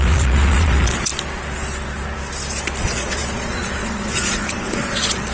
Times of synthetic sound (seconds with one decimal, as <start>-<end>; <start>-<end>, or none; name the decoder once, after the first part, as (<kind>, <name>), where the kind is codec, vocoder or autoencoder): 0.0-1.1 (vocoder, Vocos); 2.8-5.3